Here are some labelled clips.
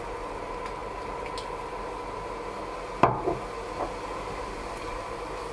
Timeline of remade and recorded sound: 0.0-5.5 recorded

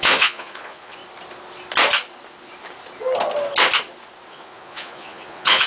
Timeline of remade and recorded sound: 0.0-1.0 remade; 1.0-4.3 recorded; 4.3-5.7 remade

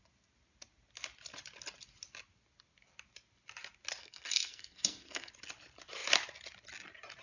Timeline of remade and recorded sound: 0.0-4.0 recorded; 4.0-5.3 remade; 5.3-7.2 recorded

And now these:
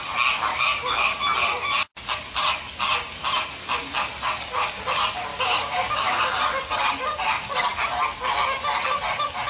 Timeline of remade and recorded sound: 0.0-0.5 recorded; 0.5-1.1 remade; 1.1-5.3 recorded; 5.3-6.2 remade; 6.2-9.5 recorded

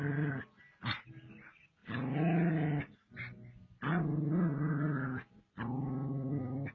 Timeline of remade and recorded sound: 0.0-6.7 recorded

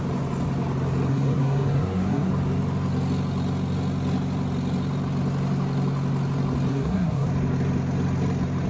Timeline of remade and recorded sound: 0.0-1.1 recorded; 1.1-2.3 remade; 2.3-6.7 recorded; 6.7-7.3 remade; 7.3-8.7 recorded